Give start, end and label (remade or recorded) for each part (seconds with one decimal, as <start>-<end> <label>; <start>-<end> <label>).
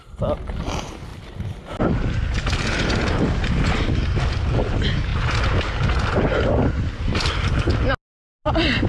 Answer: 0.0-8.9 recorded